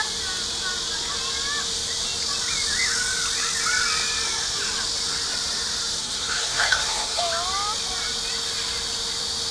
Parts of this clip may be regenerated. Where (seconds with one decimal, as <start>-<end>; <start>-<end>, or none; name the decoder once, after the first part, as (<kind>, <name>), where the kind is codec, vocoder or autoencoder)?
6.0-7.2 (codec, SNAC)